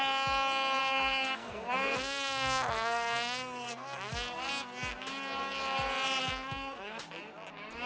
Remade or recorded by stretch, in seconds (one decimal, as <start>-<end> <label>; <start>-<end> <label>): 0.0-0.8 recorded; 0.8-4.5 remade; 4.5-6.2 recorded; 6.2-7.0 remade; 7.0-7.9 recorded